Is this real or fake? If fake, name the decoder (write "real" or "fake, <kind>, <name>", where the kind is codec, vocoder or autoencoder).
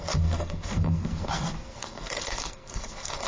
fake, codec, SNAC